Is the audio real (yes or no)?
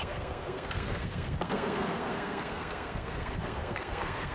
no